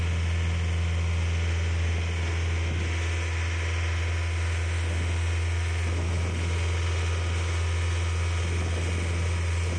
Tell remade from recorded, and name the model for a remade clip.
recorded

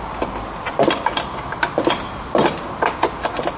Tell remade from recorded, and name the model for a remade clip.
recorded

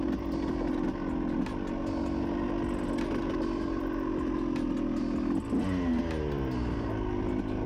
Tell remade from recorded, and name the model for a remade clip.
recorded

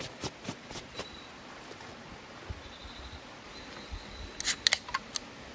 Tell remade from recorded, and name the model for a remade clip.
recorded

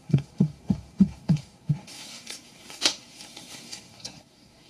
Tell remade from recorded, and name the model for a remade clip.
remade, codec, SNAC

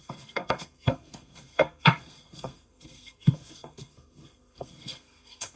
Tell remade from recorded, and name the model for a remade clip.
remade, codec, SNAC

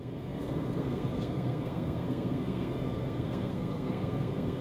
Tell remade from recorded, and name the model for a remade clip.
remade, codec, SNAC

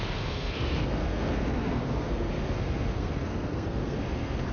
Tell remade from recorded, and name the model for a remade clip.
remade, codec, SNAC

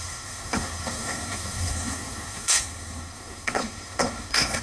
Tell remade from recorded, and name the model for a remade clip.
remade, codec, SNAC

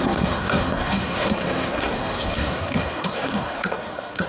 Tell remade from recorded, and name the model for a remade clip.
remade, codec, SNAC